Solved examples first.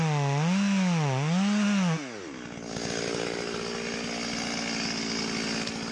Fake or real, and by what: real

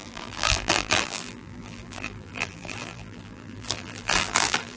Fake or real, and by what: fake, vocoder, BigVGAN v2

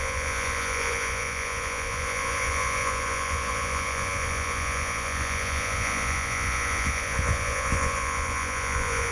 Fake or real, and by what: fake, vocoder, Vocos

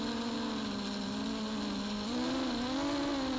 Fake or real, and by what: real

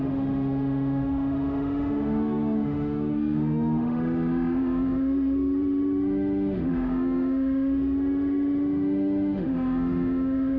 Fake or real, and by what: fake, autoencoder, DAC-VAE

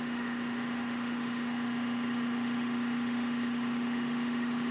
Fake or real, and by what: fake, autoencoder, DAC-VAE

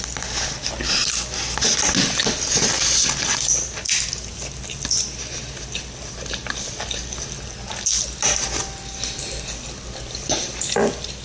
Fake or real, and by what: real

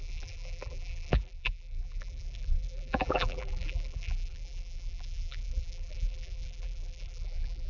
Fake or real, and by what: fake, vocoder, BigVGAN v2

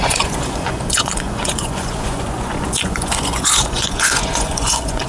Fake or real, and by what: fake, vocoder, Vocos